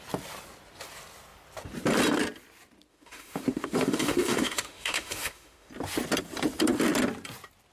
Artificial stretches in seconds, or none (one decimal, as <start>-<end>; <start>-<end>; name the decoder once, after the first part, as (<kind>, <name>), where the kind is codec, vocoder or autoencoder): 2.9-5.7 (autoencoder, DAC-VAE)